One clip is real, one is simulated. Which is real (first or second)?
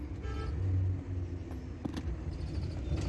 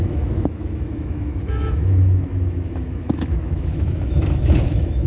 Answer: first